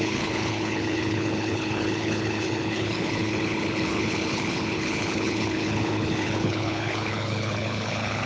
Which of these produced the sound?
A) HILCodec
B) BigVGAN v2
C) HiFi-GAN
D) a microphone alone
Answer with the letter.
A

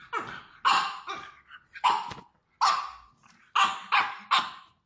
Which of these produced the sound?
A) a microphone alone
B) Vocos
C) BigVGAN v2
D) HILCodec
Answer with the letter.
A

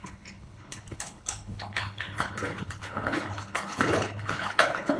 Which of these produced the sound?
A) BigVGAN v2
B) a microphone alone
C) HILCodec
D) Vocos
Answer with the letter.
C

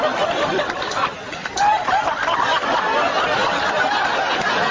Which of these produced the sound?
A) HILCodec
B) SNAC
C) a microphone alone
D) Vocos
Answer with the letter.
C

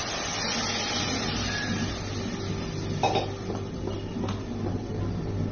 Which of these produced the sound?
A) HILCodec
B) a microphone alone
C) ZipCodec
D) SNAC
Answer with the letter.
B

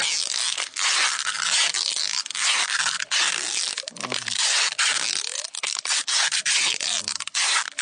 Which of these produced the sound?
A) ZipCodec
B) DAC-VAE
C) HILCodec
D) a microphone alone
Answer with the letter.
D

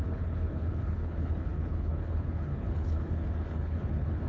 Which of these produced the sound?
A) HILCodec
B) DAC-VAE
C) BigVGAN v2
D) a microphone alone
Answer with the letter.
A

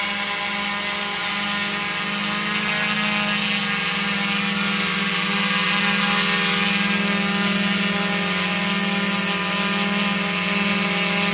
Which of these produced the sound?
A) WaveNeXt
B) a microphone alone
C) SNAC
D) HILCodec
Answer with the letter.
B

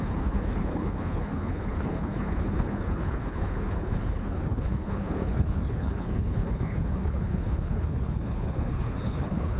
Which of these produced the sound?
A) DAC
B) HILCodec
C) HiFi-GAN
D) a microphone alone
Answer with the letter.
B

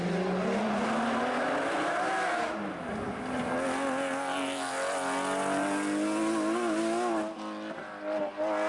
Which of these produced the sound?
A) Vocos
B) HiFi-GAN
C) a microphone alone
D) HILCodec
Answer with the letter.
C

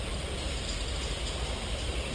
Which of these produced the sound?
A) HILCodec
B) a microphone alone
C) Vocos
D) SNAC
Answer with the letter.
B